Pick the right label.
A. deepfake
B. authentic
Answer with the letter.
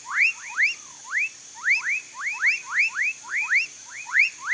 B